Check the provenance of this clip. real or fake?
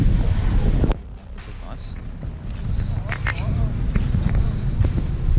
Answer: fake